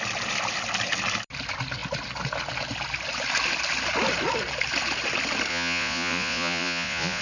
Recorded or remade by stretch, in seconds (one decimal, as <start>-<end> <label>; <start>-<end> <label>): 0.0-5.5 recorded; 5.5-7.2 remade